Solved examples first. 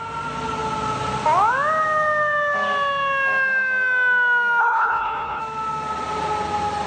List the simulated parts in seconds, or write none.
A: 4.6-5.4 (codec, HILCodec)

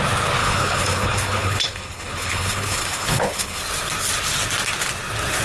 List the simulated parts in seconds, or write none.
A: 0.4-3.6 (codec, HILCodec)